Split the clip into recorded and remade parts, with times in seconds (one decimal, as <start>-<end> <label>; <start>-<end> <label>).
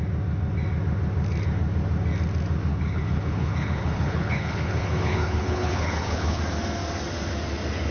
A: 0.0-2.7 recorded; 2.7-6.4 remade; 6.4-7.9 recorded